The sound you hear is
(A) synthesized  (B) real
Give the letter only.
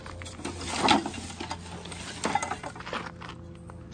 B